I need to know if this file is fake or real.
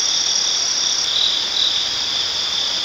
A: real